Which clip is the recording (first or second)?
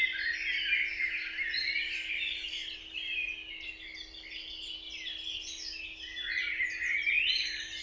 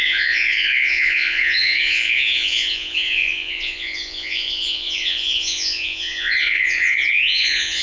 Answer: first